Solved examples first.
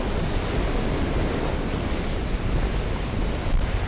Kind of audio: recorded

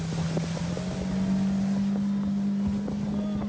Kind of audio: recorded